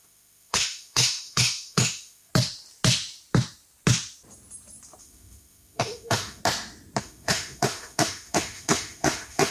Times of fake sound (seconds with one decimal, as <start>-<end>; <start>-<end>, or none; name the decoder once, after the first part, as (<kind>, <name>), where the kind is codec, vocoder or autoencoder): 0.0-2.3 (autoencoder, DAC-VAE); 5.0-6.4; 7.0-9.5